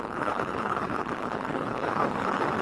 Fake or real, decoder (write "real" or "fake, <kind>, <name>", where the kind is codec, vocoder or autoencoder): fake, codec, HILCodec